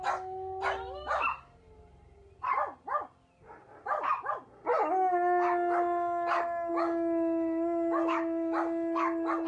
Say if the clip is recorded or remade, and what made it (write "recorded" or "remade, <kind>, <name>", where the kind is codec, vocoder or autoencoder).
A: recorded